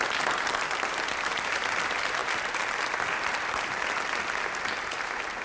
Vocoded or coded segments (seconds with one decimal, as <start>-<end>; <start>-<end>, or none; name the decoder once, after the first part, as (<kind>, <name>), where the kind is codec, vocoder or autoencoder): none